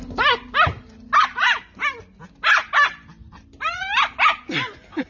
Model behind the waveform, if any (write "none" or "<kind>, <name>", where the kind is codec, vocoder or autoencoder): none